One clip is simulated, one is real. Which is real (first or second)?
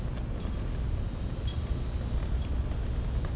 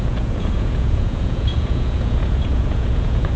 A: first